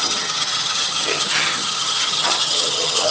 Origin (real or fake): fake